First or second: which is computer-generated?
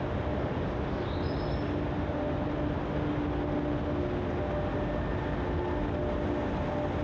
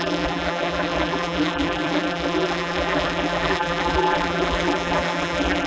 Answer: second